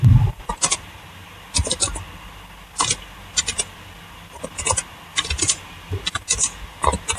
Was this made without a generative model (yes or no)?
yes